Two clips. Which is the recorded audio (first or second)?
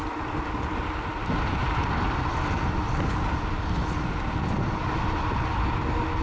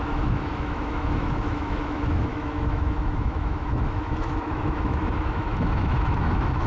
first